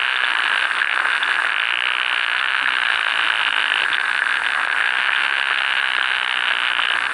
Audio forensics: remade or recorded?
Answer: recorded